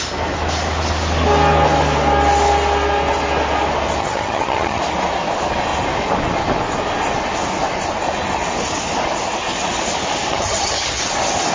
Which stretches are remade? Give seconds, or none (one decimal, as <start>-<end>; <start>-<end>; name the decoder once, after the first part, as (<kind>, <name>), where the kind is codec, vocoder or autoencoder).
4.0-4.8 (vocoder, HiFi-GAN); 10.3-11.0